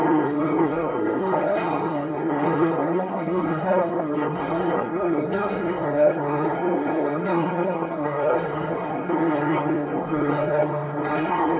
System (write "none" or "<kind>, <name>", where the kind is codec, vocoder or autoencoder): codec, SNAC